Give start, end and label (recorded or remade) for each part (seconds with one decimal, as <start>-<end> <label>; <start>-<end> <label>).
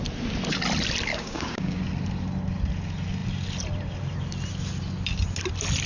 0.0-1.1 recorded; 1.1-1.8 remade; 1.8-5.9 recorded